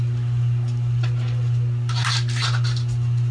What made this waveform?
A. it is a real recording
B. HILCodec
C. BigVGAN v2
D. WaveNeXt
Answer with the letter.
A